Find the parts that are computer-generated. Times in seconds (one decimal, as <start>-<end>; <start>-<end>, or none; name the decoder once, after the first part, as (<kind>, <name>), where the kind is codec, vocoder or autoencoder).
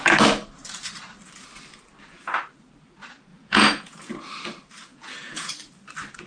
3.3-4.1 (vocoder, Vocos); 4.9-5.5